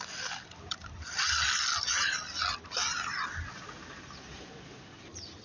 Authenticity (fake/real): real